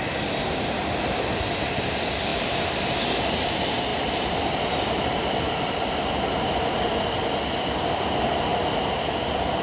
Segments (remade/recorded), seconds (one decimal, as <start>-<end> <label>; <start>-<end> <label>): 0.0-3.9 recorded; 3.9-7.5 remade; 7.5-8.5 recorded; 8.5-9.1 remade; 9.1-9.6 recorded